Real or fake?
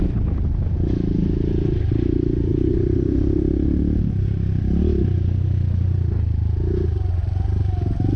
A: real